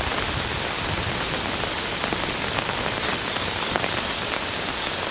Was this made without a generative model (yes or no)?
no